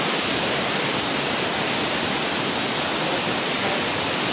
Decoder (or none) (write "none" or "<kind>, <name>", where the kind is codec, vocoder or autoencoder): none